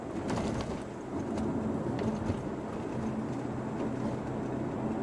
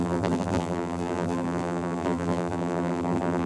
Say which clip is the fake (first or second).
second